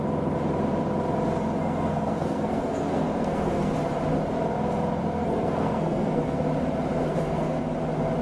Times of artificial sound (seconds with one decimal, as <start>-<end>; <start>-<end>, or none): 1.6-3.7; 5.0-6.4; 7.0-7.6